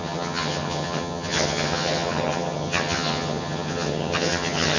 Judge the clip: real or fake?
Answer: fake